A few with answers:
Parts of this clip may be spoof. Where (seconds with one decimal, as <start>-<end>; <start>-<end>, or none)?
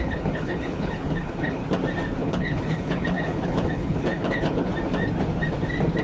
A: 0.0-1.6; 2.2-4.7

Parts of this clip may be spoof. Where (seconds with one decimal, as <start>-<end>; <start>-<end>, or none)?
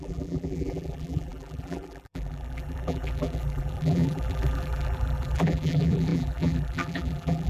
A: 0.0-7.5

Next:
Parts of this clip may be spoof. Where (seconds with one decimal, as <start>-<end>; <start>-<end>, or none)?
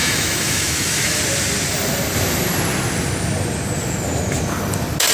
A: 0.0-1.2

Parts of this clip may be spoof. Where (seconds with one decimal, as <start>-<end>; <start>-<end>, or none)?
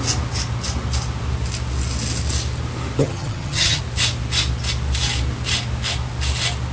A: 3.0-3.8